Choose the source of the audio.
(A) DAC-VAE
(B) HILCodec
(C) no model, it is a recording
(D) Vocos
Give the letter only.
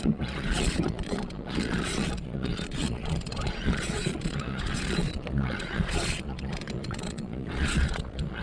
D